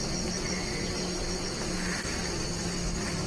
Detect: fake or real real